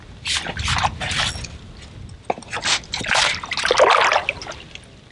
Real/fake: real